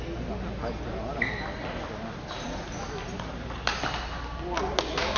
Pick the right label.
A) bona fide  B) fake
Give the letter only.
A